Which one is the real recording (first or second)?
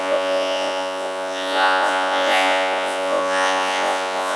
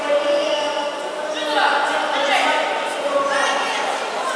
second